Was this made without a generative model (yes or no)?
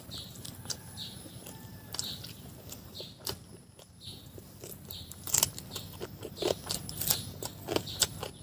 yes